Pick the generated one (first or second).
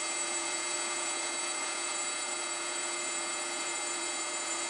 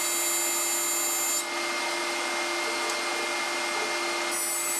first